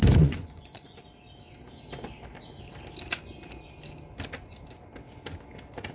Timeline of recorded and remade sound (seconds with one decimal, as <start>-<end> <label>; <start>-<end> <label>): 0.0-1.0 remade; 1.0-5.9 recorded